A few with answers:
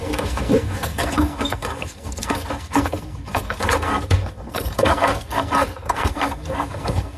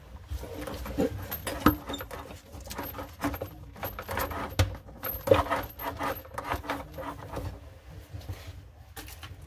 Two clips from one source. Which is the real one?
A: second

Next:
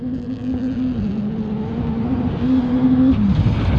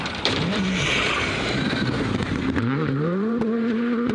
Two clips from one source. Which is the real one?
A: first